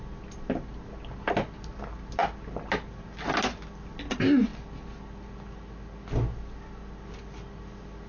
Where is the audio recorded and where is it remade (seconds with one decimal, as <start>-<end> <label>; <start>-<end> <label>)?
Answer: 0.0-8.1 recorded